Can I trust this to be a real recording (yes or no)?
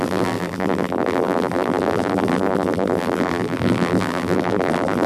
no